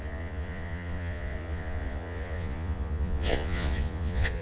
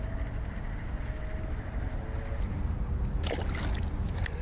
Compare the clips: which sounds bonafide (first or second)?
second